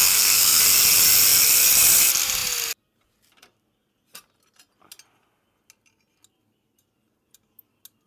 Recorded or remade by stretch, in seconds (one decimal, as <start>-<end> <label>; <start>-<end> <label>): 0.0-0.6 remade; 0.6-8.1 recorded